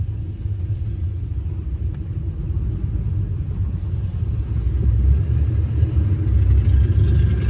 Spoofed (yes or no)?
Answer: no